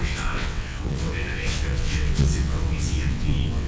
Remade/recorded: remade